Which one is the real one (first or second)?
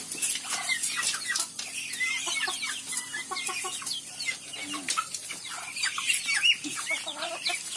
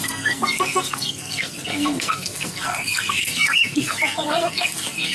first